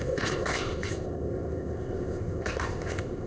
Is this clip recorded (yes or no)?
no